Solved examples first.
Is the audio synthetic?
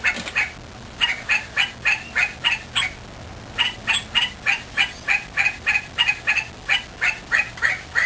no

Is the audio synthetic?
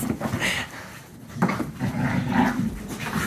no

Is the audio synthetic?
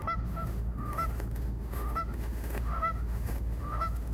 yes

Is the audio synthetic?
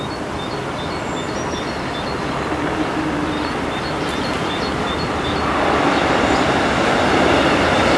no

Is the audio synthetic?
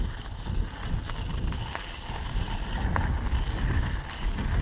no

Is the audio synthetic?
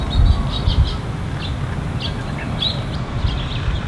no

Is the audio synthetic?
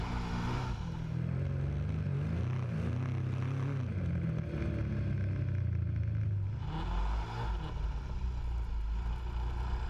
no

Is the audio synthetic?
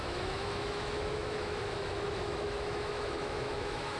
yes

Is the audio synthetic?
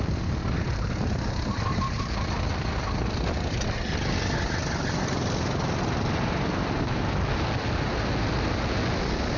no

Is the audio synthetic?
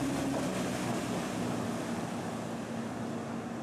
no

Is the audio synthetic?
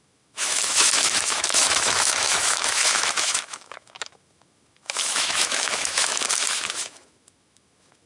yes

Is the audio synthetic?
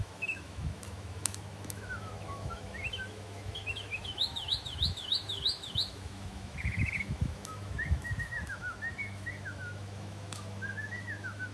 yes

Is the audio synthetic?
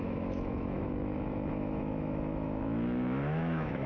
yes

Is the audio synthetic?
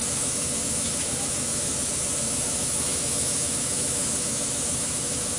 yes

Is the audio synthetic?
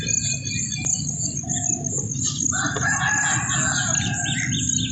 no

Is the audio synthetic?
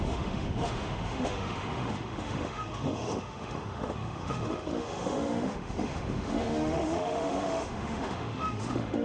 yes